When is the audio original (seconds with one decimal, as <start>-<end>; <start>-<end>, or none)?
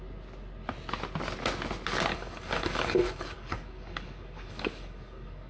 0.0-2.1